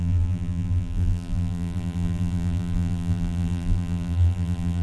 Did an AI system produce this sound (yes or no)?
yes